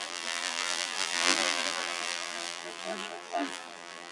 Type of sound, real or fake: fake